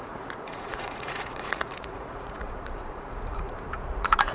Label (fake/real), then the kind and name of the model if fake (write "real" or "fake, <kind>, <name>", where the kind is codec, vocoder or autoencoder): fake, vocoder, Vocos